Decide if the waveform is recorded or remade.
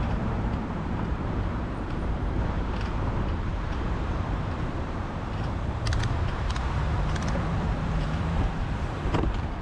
remade